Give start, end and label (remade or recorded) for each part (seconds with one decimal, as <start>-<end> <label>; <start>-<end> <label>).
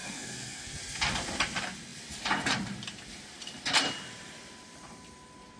0.0-0.8 remade; 0.8-5.6 recorded